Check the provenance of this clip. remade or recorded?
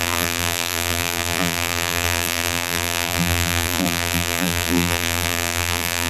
remade